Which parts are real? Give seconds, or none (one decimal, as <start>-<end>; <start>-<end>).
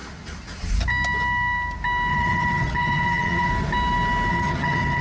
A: 0.0-2.1; 3.5-4.3